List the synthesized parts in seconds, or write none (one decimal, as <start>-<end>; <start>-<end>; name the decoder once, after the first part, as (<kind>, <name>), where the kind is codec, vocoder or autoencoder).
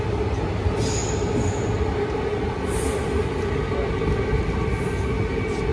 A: none